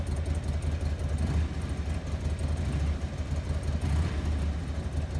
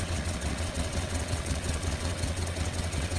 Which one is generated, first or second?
second